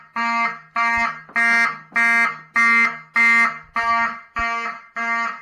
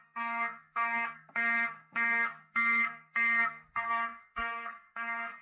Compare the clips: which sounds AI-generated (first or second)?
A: second